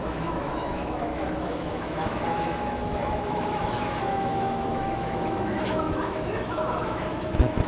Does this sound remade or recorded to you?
remade